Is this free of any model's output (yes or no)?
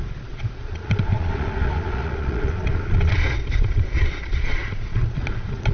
no